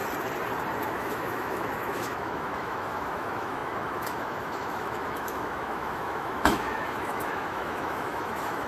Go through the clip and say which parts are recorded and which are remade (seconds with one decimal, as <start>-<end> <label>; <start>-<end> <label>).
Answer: 0.0-0.8 recorded; 0.8-8.7 remade